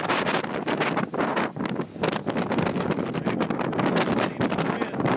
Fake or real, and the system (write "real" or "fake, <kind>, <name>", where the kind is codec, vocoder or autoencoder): real